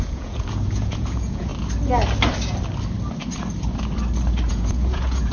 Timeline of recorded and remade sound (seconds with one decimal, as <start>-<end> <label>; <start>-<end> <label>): 0.0-1.5 remade; 1.5-4.5 recorded; 4.5-5.3 remade